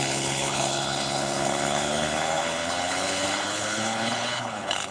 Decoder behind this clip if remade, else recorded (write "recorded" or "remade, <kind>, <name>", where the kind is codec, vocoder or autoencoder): remade, codec, HILCodec